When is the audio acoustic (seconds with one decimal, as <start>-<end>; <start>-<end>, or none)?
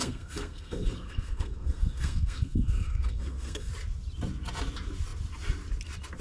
3.7-6.2